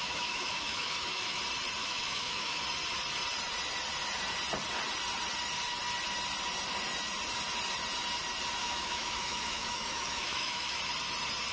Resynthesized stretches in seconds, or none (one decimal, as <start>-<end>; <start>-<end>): 0.0-1.4; 1.8-2.6; 8.6-10.8